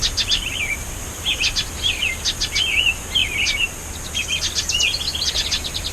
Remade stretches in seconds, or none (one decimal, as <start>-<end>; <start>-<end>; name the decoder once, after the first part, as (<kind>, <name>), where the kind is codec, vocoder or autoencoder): 0.0-1.4 (vocoder, BigVGAN v2)